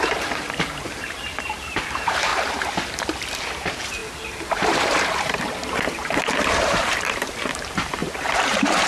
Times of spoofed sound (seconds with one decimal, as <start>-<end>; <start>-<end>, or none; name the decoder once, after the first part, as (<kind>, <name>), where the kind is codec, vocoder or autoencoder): 0.0-2.3 (vocoder, BigVGAN v2); 3.4-8.9